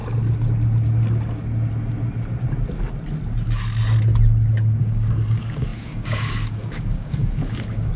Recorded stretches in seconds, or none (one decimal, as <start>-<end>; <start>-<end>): 0.0-4.5